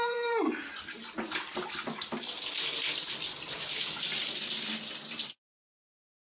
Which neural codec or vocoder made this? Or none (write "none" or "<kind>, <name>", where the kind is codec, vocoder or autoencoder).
vocoder, BigVGAN v2